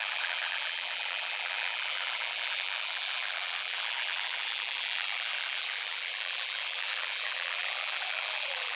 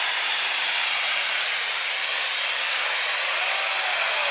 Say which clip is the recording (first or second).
second